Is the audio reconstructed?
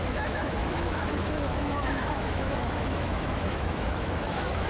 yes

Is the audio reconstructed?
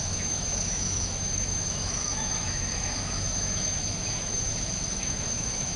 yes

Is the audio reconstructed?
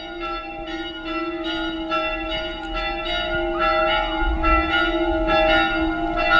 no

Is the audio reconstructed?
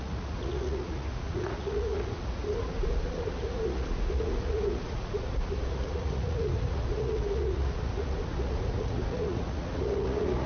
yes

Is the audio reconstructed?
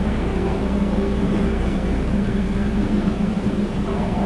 yes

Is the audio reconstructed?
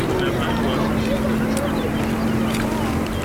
no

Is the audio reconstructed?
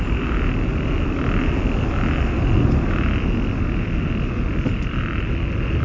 no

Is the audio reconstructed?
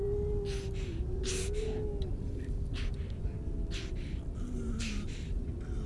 no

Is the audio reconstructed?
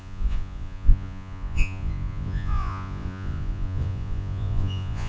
yes